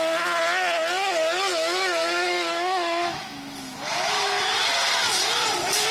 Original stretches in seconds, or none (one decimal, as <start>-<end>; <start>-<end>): 0.0-1.5; 4.5-5.9